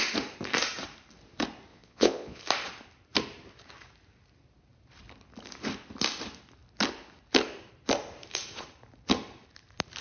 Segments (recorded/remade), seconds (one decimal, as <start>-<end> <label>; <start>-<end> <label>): 0.0-1.7 recorded; 1.7-2.4 remade; 2.4-10.0 recorded